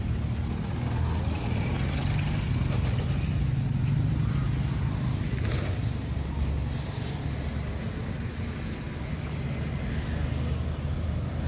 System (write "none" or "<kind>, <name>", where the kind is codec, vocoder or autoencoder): none